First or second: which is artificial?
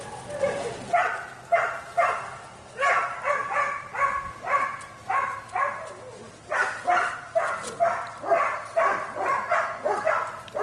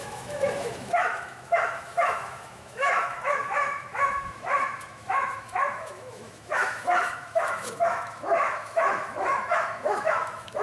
second